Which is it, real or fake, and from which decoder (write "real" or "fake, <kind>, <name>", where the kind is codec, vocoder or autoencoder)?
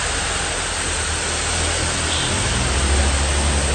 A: real